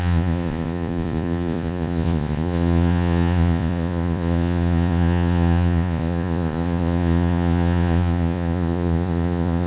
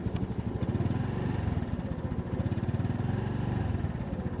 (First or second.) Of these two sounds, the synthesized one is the first